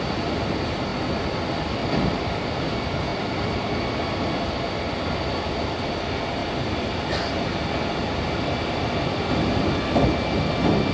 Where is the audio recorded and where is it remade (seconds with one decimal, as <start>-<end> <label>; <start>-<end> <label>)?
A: 0.0-1.8 recorded; 1.8-2.4 remade; 2.4-3.1 recorded; 3.1-3.8 remade; 3.8-6.4 recorded; 6.4-7.4 remade; 7.4-10.9 recorded